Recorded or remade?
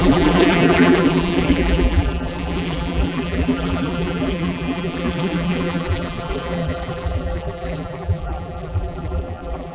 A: remade